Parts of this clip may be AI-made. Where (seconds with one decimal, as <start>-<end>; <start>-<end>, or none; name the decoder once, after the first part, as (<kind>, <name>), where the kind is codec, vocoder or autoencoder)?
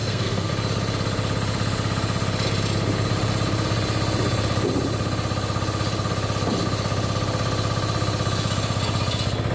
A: 0.0-0.5 (codec, SNAC)